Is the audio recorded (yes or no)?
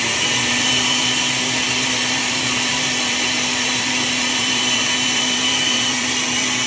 no